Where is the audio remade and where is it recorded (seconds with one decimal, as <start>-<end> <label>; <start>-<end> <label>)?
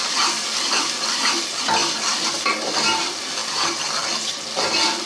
0.0-5.1 recorded